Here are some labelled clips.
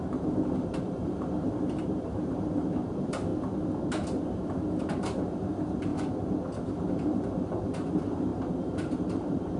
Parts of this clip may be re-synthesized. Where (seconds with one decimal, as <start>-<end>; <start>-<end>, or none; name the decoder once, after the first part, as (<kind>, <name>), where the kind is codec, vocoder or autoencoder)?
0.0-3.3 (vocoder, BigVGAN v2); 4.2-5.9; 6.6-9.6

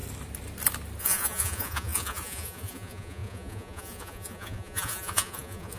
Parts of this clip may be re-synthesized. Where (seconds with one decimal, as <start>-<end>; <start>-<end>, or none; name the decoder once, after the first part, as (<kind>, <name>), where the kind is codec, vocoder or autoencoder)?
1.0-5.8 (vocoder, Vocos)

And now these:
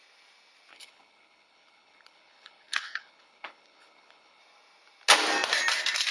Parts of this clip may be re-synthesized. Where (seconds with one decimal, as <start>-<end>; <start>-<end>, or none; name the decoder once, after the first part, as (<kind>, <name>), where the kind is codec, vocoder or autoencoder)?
0.7-4.4 (codec, HILCodec)